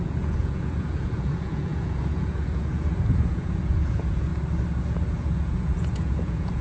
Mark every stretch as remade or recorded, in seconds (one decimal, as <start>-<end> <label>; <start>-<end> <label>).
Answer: 0.0-4.3 remade; 4.3-4.8 recorded; 4.8-6.6 remade